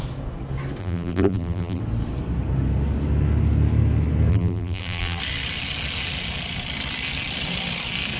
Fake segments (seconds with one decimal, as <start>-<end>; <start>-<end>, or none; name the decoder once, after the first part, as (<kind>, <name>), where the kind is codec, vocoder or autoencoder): 0.8-1.8 (vocoder, BigVGAN v2); 4.3-5.2